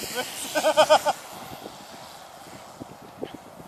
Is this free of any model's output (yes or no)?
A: yes